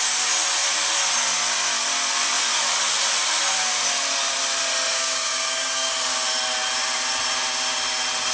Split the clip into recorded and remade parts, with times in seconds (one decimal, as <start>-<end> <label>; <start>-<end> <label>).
0.0-4.9 recorded; 4.9-5.9 remade; 5.9-8.3 recorded